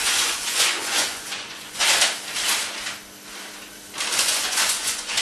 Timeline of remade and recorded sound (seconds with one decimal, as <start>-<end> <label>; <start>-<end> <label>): 0.0-1.8 remade; 1.8-4.2 recorded; 4.2-5.2 remade